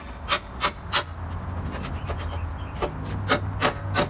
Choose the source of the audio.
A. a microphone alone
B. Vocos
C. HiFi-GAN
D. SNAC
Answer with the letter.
A